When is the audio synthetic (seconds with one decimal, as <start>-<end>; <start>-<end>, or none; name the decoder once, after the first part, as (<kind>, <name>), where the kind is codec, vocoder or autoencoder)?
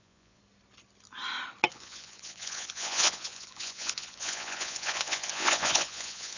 0.0-0.4 (vocoder, Vocos); 1.7-6.4